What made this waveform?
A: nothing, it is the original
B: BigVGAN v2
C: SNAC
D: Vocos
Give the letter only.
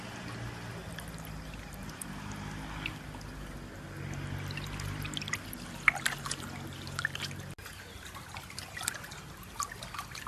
A